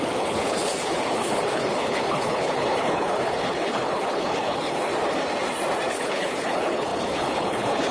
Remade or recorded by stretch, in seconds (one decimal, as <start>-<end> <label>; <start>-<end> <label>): 0.0-4.9 remade; 4.9-5.9 recorded; 5.9-7.9 remade